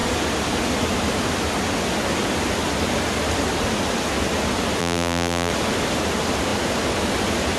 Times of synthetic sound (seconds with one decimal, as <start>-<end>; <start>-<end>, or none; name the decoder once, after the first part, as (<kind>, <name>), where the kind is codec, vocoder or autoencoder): 4.8-5.5 (vocoder, BigVGAN v2)